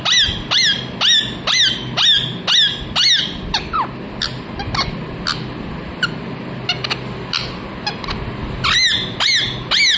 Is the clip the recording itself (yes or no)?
yes